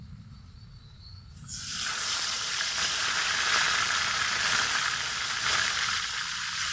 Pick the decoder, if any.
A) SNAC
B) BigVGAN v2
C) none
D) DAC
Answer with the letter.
C